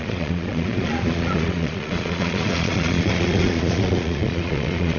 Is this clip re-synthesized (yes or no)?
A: yes